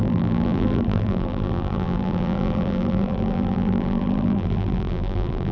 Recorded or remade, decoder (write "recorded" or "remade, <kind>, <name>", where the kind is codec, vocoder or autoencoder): remade, vocoder, BigVGAN v2